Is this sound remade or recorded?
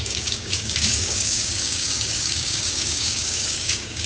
remade